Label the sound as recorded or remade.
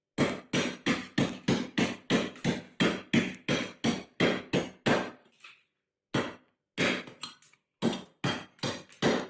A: recorded